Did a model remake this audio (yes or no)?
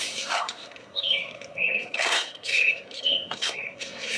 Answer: yes